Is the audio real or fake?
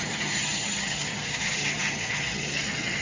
fake